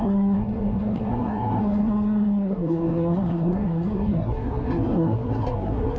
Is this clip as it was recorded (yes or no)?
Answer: no